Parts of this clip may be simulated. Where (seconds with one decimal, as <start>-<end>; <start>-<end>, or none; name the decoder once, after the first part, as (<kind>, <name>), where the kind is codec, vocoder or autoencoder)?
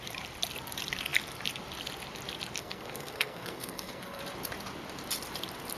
2.6-4.2 (codec, SNAC)